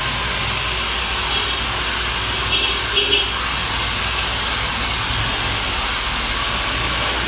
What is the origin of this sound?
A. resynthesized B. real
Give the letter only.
B